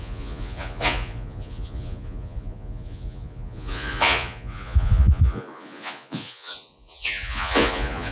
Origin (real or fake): fake